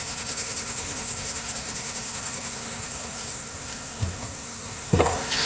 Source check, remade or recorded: remade